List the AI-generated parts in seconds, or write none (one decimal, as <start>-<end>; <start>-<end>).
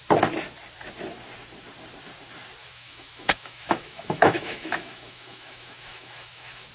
2.6-6.7